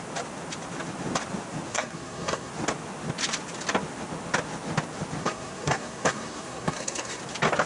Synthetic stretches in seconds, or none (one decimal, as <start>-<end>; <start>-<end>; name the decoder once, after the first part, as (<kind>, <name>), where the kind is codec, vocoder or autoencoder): 1.7-2.5 (codec, SNAC); 5.2-7.2